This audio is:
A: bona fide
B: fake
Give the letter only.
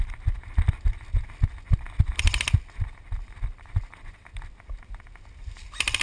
A